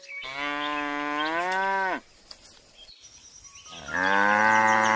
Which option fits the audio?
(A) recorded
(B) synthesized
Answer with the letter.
A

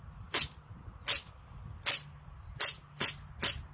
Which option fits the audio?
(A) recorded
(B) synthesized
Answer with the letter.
A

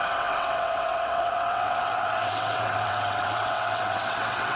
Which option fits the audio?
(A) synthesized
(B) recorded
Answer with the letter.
A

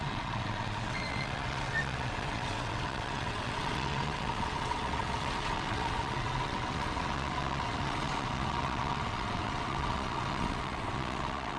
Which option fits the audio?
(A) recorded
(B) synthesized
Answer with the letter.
B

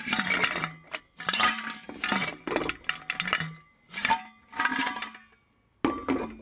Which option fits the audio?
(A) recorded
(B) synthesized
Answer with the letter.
A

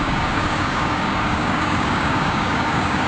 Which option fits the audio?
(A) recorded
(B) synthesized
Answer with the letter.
B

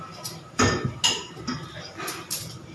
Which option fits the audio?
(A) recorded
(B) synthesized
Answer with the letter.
A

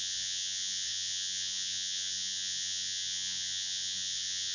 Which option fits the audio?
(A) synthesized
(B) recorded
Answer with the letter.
A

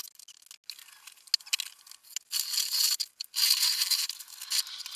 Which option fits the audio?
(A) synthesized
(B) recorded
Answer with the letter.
B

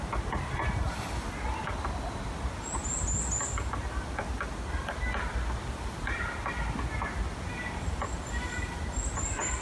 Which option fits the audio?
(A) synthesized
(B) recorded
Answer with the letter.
B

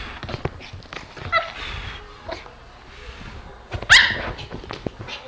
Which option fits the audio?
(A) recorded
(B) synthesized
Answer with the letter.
A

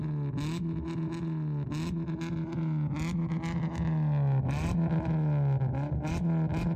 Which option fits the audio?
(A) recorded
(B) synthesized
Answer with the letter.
A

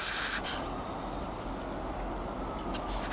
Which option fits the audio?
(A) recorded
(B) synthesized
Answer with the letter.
A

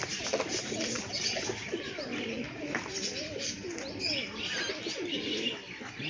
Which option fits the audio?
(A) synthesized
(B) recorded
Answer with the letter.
B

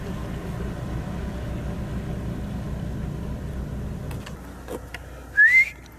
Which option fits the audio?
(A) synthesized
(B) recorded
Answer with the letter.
B